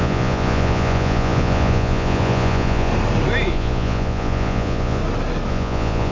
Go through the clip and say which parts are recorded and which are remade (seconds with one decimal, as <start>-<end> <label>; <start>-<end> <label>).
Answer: 0.0-2.9 remade; 2.9-3.5 recorded; 3.5-5.0 remade; 5.0-5.5 recorded; 5.5-6.1 remade